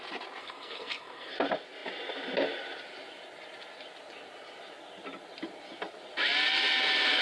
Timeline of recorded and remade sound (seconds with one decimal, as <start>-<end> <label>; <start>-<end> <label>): 0.0-0.4 recorded; 0.4-1.3 remade; 1.3-7.2 recorded